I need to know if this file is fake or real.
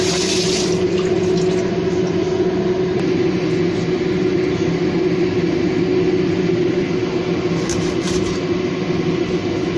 real